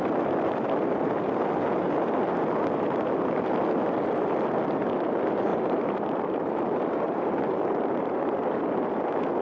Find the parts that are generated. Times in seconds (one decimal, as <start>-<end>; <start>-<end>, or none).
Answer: 5.5-8.6